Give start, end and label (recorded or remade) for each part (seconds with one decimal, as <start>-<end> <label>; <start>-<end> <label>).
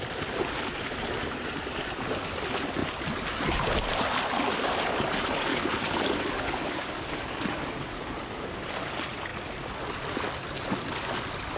0.0-5.5 recorded; 5.5-8.6 remade; 8.6-11.6 recorded